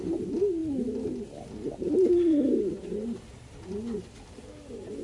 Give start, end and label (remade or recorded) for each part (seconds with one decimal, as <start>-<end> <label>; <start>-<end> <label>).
0.0-5.0 recorded